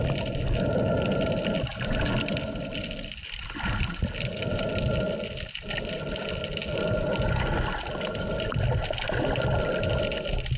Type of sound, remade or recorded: recorded